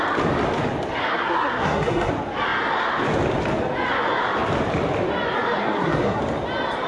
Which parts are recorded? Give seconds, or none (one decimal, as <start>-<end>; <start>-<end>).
0.0-1.0; 2.1-5.6; 6.2-6.9